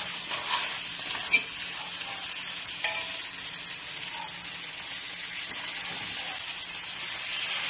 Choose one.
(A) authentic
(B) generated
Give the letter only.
A